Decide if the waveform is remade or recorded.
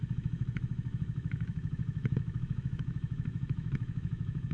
remade